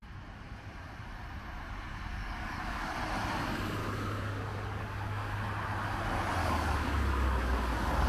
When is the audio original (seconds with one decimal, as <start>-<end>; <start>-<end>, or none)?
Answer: 0.0-2.1; 2.9-3.8; 5.4-6.4